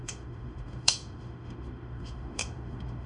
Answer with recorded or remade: remade